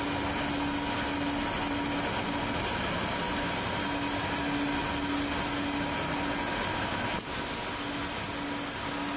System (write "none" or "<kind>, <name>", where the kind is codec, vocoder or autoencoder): none